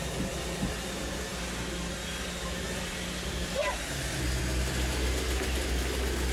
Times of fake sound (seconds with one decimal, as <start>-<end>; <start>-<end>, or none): none